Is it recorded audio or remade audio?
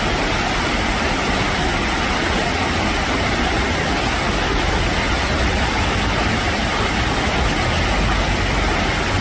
recorded